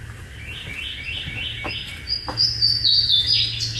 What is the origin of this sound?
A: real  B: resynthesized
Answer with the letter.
A